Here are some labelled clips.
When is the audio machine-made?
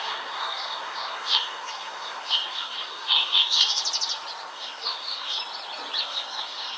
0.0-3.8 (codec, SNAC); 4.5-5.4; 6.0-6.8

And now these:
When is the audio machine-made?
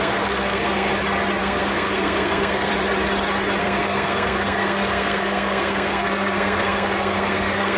0.0-0.9 (codec, SNAC); 1.4-2.7; 3.6-7.8